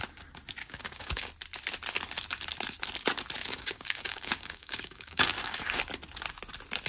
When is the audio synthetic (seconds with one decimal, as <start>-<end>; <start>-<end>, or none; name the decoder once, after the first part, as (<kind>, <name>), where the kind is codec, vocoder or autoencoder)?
0.6-1.3 (codec, DAC); 3.4-5.8